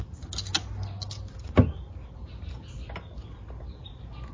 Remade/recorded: recorded